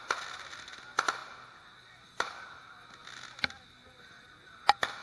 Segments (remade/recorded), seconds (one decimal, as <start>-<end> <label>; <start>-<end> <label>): 0.0-5.0 recorded